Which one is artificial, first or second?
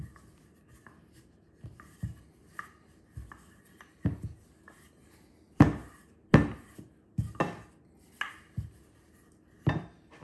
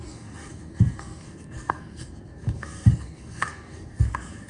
second